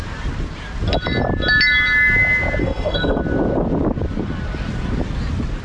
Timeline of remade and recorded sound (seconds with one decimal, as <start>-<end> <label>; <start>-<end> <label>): 0.0-2.6 recorded; 2.6-3.2 remade; 3.2-5.6 recorded